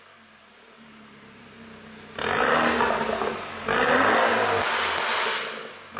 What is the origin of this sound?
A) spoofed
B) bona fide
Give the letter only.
B